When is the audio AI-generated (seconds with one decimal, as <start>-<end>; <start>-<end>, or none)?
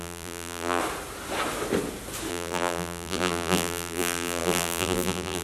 0.0-0.8; 2.3-5.4